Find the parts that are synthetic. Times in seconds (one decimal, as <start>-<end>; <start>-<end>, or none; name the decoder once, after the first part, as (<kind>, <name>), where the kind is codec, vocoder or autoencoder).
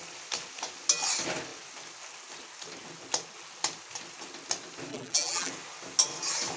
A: 4.9-5.5 (vocoder, BigVGAN v2)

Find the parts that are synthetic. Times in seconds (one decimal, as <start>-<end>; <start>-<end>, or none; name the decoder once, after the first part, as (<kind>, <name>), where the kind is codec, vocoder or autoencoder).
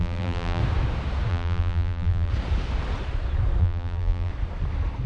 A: 0.0-0.6 (vocoder, BigVGAN v2); 1.3-2.3; 3.6-4.3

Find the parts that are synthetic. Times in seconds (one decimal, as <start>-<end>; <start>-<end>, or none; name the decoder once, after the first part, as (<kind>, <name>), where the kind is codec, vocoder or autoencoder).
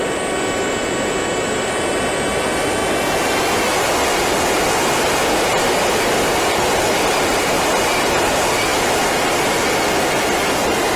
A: 1.4-2.0 (vocoder, BigVGAN v2)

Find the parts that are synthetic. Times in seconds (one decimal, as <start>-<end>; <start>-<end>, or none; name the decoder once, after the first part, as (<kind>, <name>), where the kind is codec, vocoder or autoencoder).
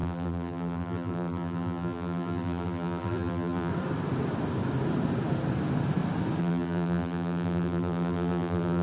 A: 0.0-3.7 (vocoder, BigVGAN v2); 6.4-8.8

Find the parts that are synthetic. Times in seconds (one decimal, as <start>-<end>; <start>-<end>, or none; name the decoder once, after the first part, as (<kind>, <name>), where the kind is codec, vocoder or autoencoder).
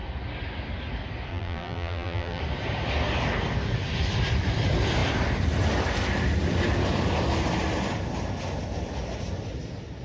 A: 1.3-2.4 (vocoder, BigVGAN v2)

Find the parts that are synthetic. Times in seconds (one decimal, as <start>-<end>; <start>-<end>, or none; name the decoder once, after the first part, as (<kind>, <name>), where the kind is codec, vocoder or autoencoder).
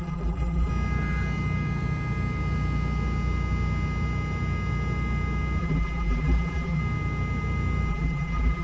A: 0.0-0.7 (vocoder, BigVGAN v2); 5.6-6.8; 7.9-8.6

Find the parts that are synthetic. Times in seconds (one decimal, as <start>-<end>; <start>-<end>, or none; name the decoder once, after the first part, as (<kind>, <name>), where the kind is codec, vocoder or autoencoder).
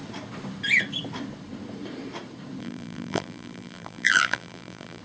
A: 2.6-5.0 (vocoder, BigVGAN v2)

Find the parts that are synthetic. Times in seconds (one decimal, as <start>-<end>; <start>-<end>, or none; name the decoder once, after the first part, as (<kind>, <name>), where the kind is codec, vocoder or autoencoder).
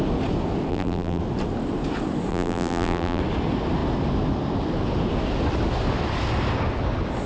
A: 0.7-1.2 (vocoder, BigVGAN v2); 2.3-3.2